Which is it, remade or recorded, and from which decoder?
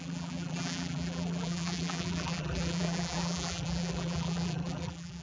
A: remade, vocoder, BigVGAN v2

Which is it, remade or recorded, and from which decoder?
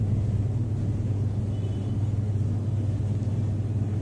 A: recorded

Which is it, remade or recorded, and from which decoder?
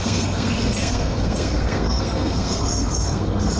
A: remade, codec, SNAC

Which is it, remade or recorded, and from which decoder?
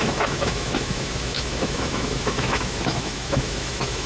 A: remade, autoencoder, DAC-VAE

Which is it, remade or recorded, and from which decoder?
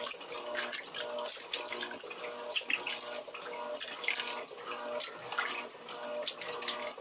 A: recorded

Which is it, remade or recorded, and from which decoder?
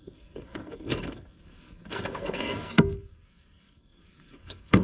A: remade, codec, SNAC